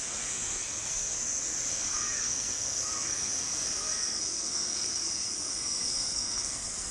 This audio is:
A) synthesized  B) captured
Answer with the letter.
A